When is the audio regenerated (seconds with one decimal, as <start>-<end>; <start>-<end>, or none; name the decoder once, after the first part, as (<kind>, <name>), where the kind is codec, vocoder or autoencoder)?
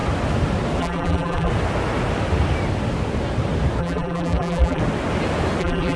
0.8-1.5 (vocoder, BigVGAN v2); 3.8-4.8; 5.6-6.0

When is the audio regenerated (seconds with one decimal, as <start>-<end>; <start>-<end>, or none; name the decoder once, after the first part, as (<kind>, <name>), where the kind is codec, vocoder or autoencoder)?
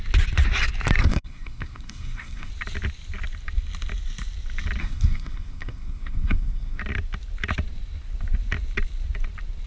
1.0-2.5 (codec, SNAC); 4.8-6.8